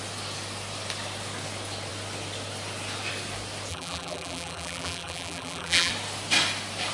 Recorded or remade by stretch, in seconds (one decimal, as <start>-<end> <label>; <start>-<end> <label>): 0.0-3.7 recorded; 3.7-5.9 remade; 5.9-6.9 recorded